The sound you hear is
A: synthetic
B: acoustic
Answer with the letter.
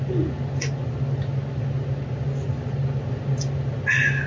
B